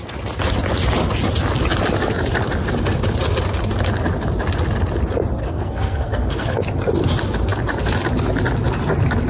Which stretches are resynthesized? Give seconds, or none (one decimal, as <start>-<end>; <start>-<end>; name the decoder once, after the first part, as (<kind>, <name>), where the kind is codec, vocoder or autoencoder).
5.4-6.6 (codec, SNAC)